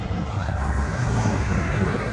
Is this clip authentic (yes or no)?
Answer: no